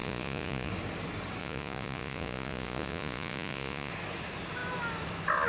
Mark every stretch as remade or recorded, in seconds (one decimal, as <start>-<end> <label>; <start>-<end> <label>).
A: 0.0-0.7 remade; 0.7-1.4 recorded; 1.4-3.9 remade; 3.9-5.5 recorded